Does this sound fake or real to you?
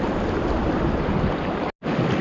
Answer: real